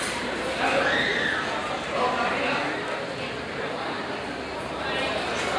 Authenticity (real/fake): fake